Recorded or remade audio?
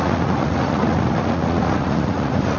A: remade